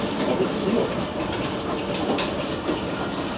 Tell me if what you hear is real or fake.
real